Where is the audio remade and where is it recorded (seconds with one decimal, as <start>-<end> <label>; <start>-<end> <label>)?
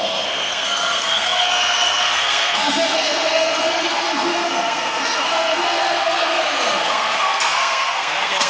0.0-8.5 remade